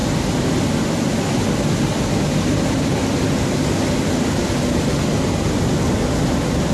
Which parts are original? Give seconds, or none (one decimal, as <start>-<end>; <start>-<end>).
0.0-6.7